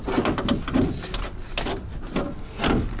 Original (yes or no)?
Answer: yes